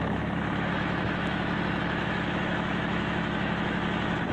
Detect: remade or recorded remade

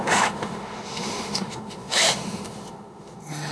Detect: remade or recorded remade